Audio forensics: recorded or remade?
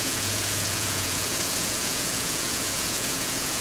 remade